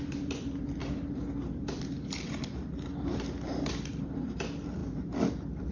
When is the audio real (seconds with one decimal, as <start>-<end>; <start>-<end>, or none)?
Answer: 0.0-0.8; 4.2-5.7